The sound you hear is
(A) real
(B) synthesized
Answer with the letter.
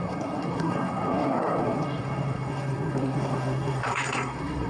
B